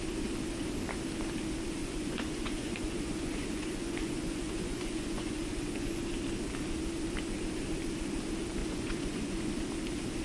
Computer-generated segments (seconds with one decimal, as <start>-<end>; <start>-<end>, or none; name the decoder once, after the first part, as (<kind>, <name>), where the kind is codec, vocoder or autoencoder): 1.8-6.0 (vocoder, Vocos); 8.6-9.5

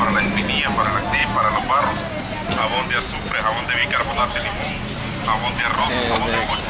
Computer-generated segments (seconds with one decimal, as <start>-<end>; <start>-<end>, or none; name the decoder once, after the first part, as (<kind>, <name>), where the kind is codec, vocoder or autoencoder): 1.2-1.8 (vocoder, BigVGAN v2); 3.8-6.2

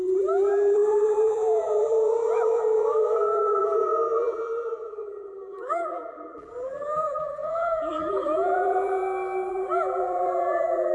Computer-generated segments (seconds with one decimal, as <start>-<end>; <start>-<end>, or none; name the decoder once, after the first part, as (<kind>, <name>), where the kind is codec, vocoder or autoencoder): 0.0-9.0 (vocoder, BigVGAN v2); 9.5-10.9

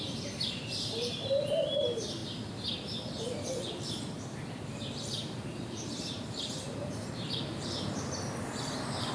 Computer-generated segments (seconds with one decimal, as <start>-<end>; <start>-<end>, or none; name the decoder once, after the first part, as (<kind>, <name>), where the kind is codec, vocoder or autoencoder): 0.0-2.2 (vocoder, BigVGAN v2); 3.2-9.1

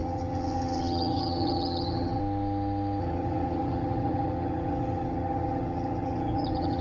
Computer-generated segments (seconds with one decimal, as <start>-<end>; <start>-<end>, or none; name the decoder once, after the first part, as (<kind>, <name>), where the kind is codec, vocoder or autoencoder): 0.0-2.2 (vocoder, HiFi-GAN); 3.0-6.8

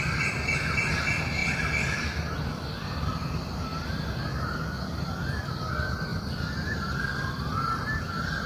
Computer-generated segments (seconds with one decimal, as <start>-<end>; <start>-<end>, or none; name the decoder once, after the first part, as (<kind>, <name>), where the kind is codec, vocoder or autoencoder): 6.1-8.0 (vocoder, BigVGAN v2)